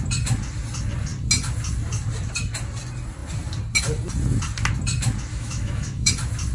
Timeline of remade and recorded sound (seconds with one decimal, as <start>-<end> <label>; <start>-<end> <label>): 0.0-5.3 recorded; 5.3-6.1 remade; 6.1-6.5 recorded